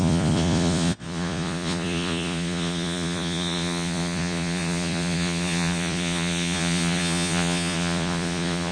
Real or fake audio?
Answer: fake